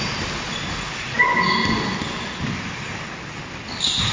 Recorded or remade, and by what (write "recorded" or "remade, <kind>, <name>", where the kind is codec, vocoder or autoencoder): recorded